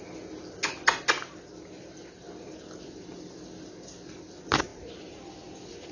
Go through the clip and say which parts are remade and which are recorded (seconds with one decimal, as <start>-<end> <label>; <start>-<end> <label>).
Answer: 0.0-4.7 recorded; 4.7-5.3 remade; 5.3-5.9 recorded